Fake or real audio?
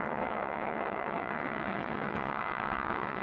fake